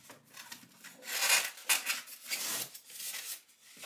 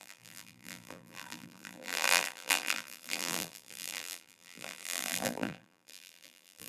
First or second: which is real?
first